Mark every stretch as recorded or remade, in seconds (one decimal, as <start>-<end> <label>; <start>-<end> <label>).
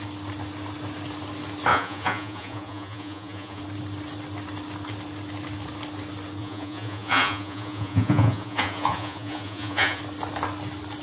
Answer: 0.0-1.7 recorded; 1.7-3.6 remade; 3.6-6.4 recorded; 6.4-10.0 remade; 10.0-11.0 recorded